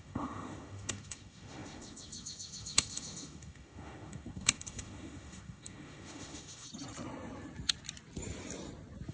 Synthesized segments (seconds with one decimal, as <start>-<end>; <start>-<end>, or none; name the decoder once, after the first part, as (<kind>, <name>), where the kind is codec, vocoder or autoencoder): 0.0-6.7 (autoencoder, DAC-VAE)